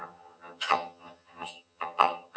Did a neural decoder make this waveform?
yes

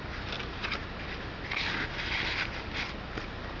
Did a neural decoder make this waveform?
no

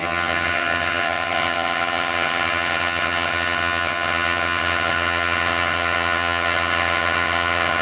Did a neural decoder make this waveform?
yes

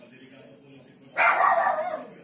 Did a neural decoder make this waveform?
no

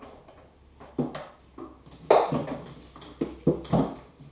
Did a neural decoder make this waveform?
no